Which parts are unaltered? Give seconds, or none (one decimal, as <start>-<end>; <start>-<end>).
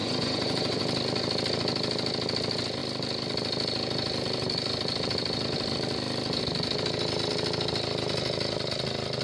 0.8-9.2